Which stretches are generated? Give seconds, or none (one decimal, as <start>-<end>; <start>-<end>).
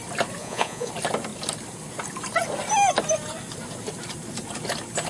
0.4-0.9